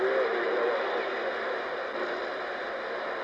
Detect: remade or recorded recorded